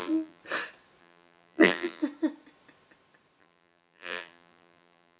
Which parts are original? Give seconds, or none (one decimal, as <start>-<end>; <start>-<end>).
0.4-1.0; 2.0-3.4